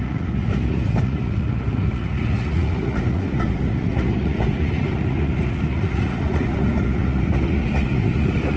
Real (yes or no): no